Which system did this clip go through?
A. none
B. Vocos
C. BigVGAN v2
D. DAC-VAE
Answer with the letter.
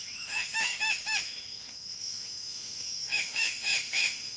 D